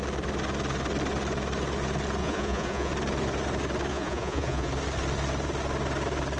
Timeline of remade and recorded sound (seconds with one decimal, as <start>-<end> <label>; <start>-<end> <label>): 0.0-2.2 recorded; 2.2-2.9 remade; 2.9-3.9 recorded; 3.9-4.7 remade; 4.7-6.4 recorded